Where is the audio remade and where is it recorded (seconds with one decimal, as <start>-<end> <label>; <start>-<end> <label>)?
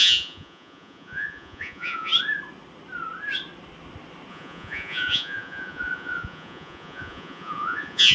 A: 0.0-2.1 remade; 2.1-4.3 recorded; 4.3-8.1 remade